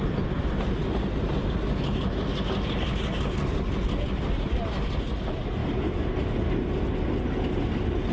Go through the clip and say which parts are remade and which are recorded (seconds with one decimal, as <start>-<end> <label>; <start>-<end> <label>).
0.0-8.1 recorded